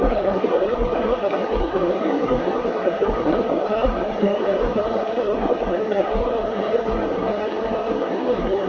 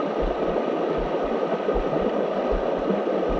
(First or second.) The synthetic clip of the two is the first